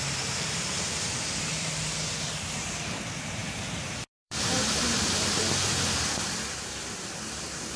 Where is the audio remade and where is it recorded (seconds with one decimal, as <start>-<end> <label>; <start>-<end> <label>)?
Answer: 0.0-7.8 remade